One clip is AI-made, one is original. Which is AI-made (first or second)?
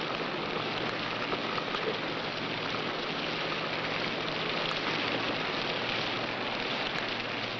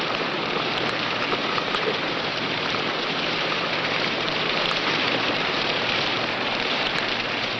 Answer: second